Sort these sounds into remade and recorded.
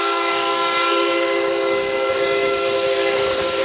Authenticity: remade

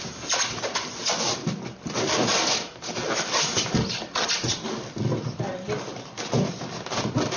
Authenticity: recorded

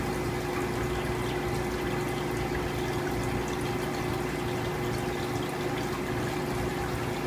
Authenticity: recorded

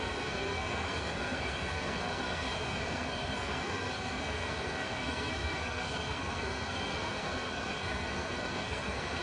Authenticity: remade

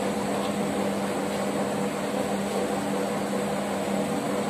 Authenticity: recorded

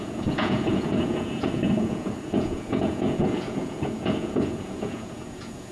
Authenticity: remade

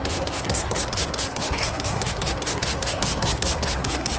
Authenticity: remade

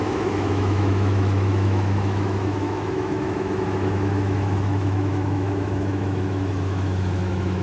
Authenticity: remade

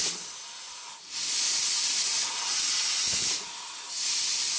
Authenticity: recorded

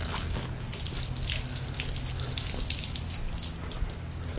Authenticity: recorded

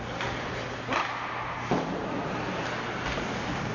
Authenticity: recorded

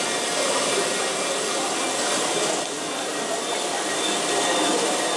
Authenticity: remade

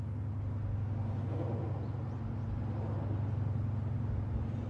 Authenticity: recorded